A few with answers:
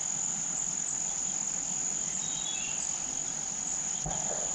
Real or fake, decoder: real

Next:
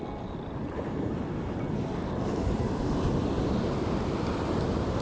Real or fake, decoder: real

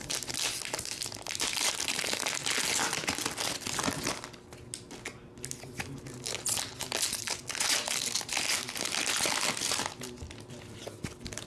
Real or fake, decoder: real